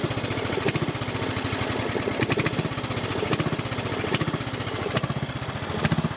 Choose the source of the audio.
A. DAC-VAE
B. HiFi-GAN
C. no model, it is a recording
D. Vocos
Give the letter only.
C